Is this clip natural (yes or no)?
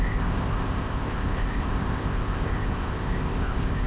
no